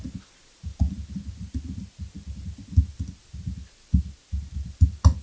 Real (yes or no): yes